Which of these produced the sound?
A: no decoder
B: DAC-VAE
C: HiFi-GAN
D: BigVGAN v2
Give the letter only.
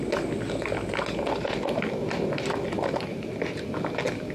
A